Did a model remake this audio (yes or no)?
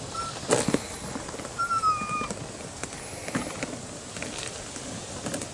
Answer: no